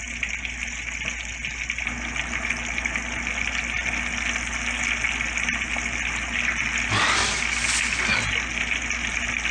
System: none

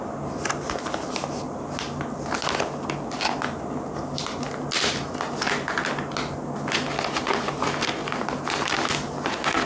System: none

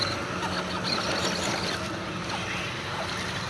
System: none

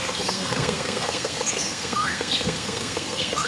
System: codec, SNAC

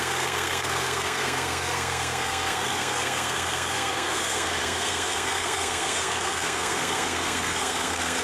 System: codec, SNAC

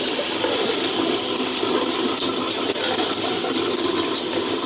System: none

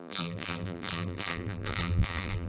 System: vocoder, BigVGAN v2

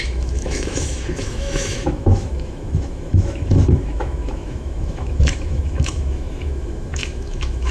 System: autoencoder, DAC-VAE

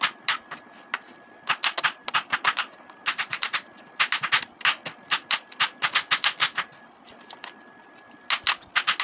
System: none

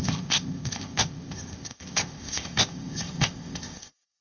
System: codec, ZipCodec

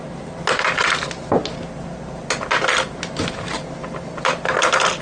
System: none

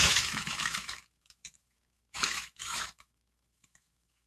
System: autoencoder, DAC-VAE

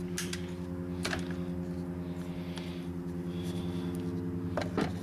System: none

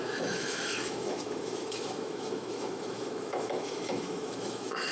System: autoencoder, DAC-VAE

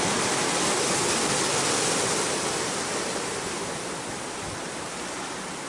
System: none